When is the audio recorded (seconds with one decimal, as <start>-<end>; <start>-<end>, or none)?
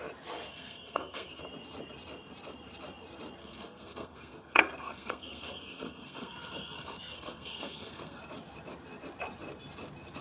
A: 0.0-0.5; 1.4-3.4; 8.2-10.2